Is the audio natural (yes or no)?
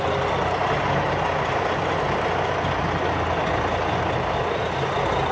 yes